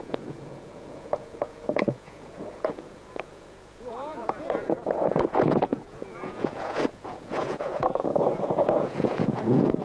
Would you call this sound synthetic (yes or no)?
yes